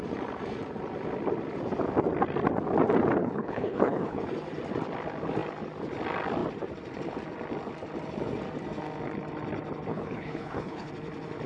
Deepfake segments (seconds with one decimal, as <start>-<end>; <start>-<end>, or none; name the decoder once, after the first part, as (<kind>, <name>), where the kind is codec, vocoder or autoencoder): 3.2-4.2 (codec, HILCodec); 9.9-10.9